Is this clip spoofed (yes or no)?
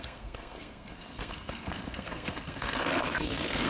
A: yes